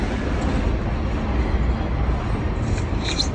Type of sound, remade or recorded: recorded